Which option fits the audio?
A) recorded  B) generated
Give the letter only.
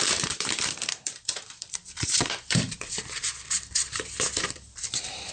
B